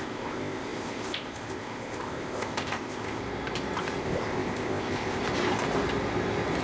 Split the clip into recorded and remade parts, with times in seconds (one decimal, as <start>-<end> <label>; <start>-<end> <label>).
0.0-3.2 remade; 3.2-4.0 recorded; 4.0-5.2 remade; 5.2-6.6 recorded